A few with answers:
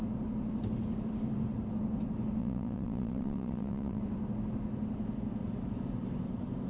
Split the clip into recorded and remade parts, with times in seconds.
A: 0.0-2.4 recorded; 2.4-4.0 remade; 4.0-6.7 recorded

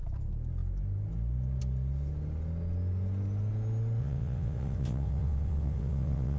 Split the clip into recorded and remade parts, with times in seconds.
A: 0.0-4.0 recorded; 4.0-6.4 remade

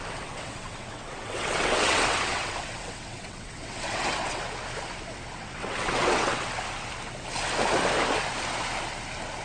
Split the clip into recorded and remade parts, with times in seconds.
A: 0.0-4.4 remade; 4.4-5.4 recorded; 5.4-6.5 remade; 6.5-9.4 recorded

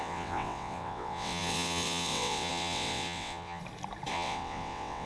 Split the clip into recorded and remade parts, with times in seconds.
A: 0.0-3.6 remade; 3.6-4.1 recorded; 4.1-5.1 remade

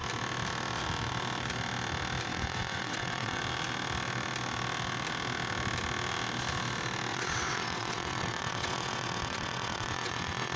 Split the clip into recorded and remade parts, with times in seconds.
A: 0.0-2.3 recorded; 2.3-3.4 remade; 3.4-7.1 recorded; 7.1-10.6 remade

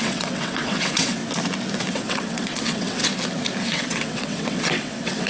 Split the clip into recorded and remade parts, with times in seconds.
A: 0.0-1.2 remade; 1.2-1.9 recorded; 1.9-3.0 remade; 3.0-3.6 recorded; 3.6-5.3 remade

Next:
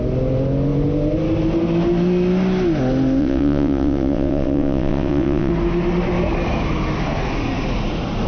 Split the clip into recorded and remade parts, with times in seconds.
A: 0.0-3.2 recorded; 3.2-5.5 remade; 5.5-8.3 recorded

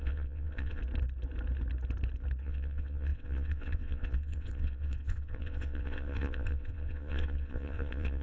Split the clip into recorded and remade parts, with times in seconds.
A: 0.0-0.8 remade; 0.8-2.4 recorded; 2.4-8.2 remade